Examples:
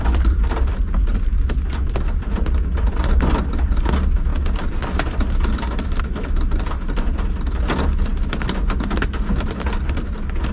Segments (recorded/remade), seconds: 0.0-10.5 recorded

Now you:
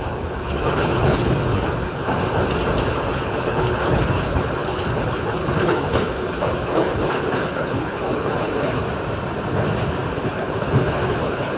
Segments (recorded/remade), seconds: 0.0-2.0 remade; 2.0-2.9 recorded; 2.9-8.8 remade; 8.8-10.1 recorded; 10.1-11.6 remade

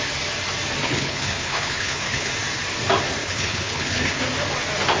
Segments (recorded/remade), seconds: 0.0-0.8 recorded; 0.8-2.3 remade; 2.3-3.2 recorded; 3.2-4.2 remade; 4.2-5.0 recorded

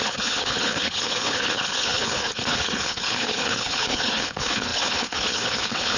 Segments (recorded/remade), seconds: 0.0-6.0 remade

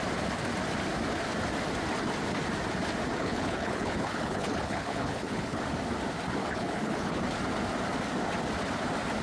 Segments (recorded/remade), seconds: 0.0-3.2 recorded; 3.2-5.6 remade; 5.6-6.4 recorded; 6.4-7.2 remade; 7.2-9.2 recorded